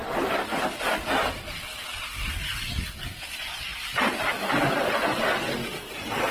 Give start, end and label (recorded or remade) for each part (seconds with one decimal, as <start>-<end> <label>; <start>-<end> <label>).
0.0-2.3 remade; 2.3-6.3 recorded